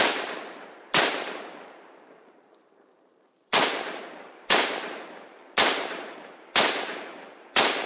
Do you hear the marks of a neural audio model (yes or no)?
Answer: yes